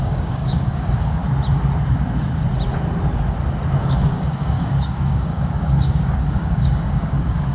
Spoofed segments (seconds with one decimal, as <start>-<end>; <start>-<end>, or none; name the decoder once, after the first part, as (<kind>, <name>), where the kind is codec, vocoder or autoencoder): 0.0-1.2 (codec, DAC); 3.8-7.5